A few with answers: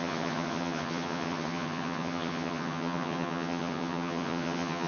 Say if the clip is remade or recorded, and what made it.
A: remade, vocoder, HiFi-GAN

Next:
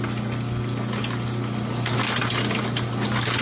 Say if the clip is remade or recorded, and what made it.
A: recorded